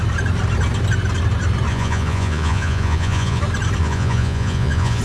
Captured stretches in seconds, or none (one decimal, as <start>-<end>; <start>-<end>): 0.0-1.7; 3.4-3.8